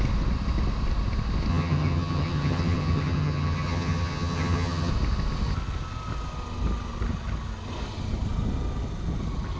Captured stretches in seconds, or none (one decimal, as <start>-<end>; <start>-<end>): 0.0-1.5; 4.9-9.6